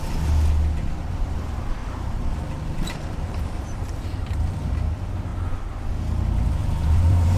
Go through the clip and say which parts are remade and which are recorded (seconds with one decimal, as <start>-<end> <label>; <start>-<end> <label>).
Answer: 0.0-1.8 recorded; 1.8-4.6 remade; 4.6-6.6 recorded; 6.6-7.4 remade